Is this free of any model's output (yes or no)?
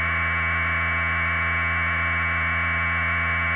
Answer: yes